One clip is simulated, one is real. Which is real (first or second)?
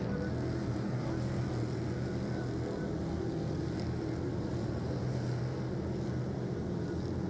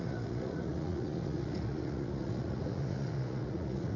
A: first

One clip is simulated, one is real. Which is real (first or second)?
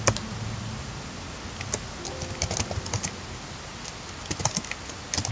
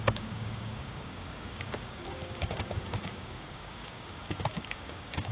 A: first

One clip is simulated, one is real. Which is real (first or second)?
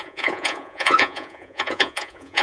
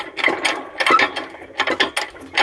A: second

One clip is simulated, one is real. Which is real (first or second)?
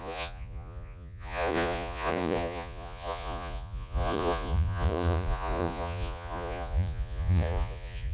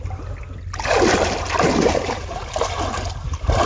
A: second